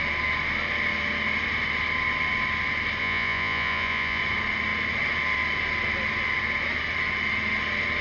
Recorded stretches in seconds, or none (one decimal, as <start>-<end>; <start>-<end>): 0.0-3.0; 4.2-8.0